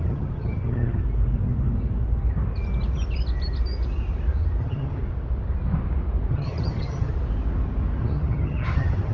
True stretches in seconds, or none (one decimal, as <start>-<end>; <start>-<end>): 1.0-4.6; 5.0-6.3; 7.1-8.0